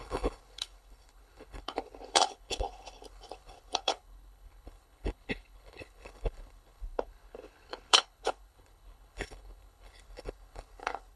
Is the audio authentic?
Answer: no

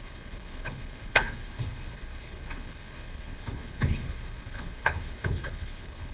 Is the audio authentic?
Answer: no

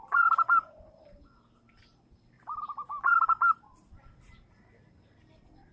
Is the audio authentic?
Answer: yes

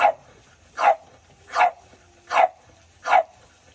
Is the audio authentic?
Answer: yes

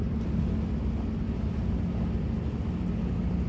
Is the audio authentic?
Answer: yes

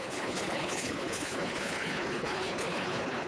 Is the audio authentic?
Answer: no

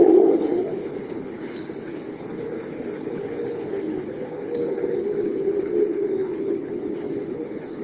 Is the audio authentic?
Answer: no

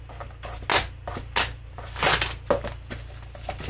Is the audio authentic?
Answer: yes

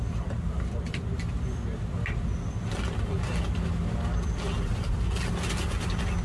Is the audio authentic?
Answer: yes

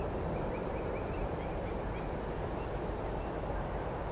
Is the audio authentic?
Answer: yes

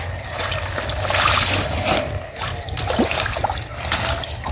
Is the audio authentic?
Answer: yes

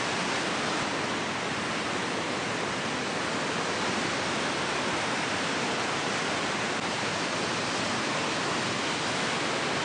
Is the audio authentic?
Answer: yes